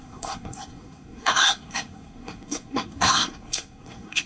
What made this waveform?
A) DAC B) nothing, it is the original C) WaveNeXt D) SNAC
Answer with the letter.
D